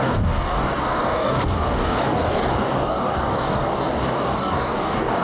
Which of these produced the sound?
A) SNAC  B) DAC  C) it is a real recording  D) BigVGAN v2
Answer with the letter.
B